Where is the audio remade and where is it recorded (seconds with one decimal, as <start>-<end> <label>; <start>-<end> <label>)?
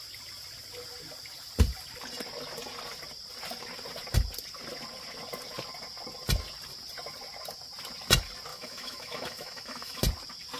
0.0-8.5 recorded; 8.5-10.0 remade; 10.0-10.6 recorded